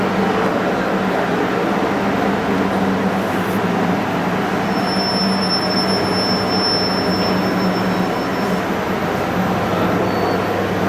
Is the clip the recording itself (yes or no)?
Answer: yes